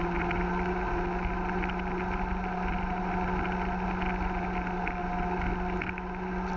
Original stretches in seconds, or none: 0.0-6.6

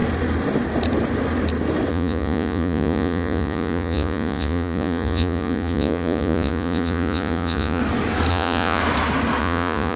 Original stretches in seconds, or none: 0.0-1.9; 7.8-8.3; 8.8-9.4

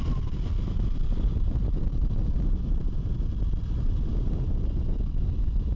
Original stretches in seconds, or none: 0.0-5.8

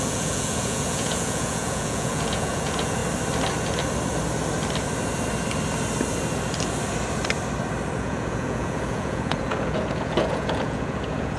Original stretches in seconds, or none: 3.0-8.0

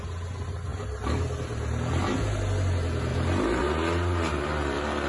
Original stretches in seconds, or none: 0.0-5.1